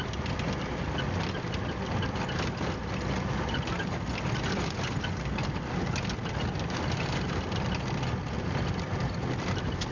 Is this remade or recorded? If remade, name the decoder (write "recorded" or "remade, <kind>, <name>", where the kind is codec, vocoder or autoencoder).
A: recorded